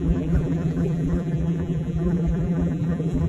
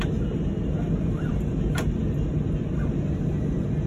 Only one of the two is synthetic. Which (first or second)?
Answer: first